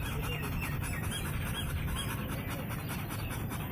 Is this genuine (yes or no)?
yes